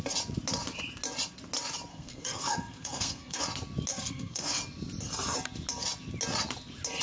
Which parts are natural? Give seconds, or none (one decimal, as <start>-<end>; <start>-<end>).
0.0-1.9; 3.4-3.9; 4.6-7.0